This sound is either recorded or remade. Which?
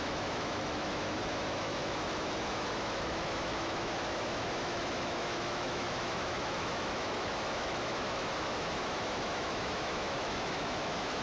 remade